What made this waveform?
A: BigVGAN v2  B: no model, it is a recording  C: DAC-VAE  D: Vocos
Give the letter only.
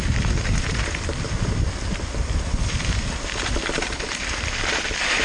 A